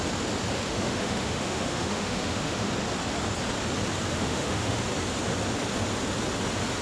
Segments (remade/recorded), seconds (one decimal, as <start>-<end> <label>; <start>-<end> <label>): 0.0-0.7 recorded; 0.7-2.7 remade; 2.7-4.1 recorded; 4.1-4.8 remade; 4.8-6.8 recorded

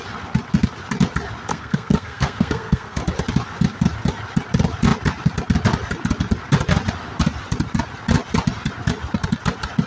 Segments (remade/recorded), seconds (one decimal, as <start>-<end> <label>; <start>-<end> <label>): 0.0-1.5 recorded; 1.5-3.0 remade; 3.0-9.9 recorded

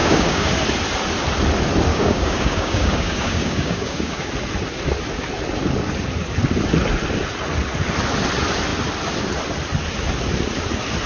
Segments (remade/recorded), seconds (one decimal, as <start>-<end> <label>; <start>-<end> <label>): 0.0-0.5 remade; 0.5-1.9 recorded; 1.9-4.3 remade; 4.3-11.1 recorded

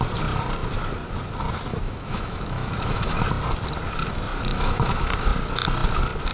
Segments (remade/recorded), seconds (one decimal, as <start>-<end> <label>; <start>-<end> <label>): 0.0-1.7 recorded; 1.7-3.2 remade; 3.2-4.5 recorded; 4.5-5.1 remade; 5.1-6.3 recorded